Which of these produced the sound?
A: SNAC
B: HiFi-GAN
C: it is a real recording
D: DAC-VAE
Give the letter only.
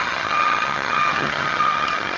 B